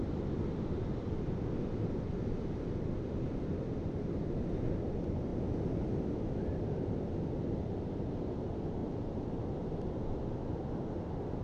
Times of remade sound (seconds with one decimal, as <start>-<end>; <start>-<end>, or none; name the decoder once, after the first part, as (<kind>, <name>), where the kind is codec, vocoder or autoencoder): 8.8-9.4 (vocoder, BigVGAN v2)